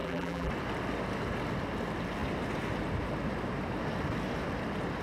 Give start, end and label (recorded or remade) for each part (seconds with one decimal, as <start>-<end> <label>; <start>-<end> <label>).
0.0-0.5 remade; 0.5-5.0 recorded